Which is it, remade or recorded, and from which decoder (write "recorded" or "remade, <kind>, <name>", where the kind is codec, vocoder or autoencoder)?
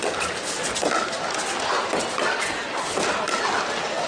recorded